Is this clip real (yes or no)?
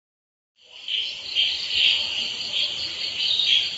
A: yes